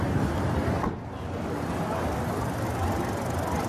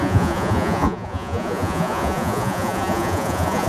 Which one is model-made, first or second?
second